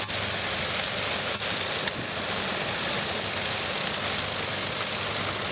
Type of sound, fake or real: real